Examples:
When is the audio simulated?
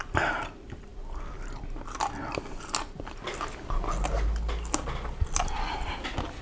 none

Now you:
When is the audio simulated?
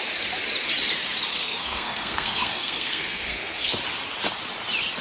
1.3-3.7 (codec, SNAC)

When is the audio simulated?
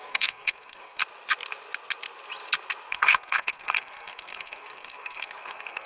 0.0-1.0 (codec, SNAC); 2.9-5.9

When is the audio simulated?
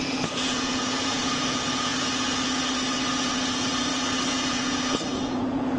0.0-1.9 (vocoder, Vocos); 3.3-3.9; 4.5-5.8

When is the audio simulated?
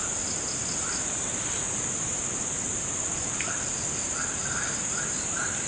2.7-3.7 (vocoder, BigVGAN v2)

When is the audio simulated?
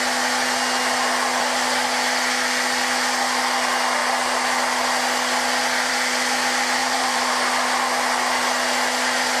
6.8-7.3 (vocoder, BigVGAN v2)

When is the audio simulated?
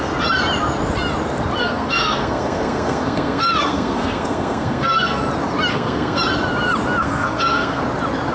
1.6-5.2 (codec, SNAC); 5.7-6.2; 7.0-7.8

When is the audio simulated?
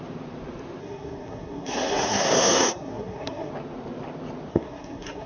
0.8-3.5 (codec, SNAC); 4.5-5.3